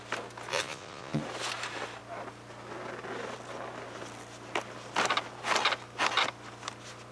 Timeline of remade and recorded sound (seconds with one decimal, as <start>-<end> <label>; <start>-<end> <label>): 0.0-0.5 recorded; 0.5-1.2 remade; 1.2-7.1 recorded

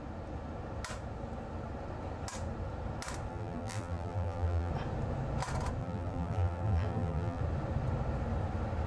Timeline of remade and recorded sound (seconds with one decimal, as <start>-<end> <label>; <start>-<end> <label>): 0.0-3.3 recorded; 3.3-4.7 remade; 4.7-5.8 recorded; 5.8-7.4 remade; 7.4-8.9 recorded

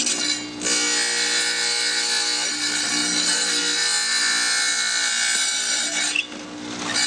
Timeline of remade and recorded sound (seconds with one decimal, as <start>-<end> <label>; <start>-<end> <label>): 0.0-7.1 recorded

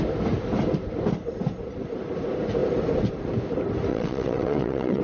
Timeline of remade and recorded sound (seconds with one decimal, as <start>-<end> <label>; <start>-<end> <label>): 0.0-3.9 recorded; 3.9-5.0 remade

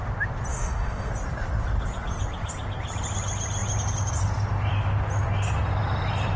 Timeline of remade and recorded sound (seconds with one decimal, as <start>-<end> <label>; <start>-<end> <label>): 0.0-0.5 recorded; 0.5-1.1 remade; 1.1-6.4 recorded

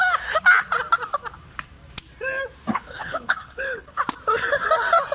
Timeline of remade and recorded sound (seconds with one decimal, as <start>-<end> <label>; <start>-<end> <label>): 0.0-2.7 recorded; 2.7-4.0 remade; 4.0-5.1 recorded

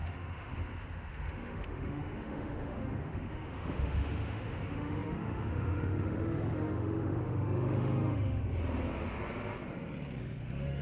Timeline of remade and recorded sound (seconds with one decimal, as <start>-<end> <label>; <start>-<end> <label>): 0.0-8.4 remade; 8.4-10.2 recorded; 10.2-10.8 remade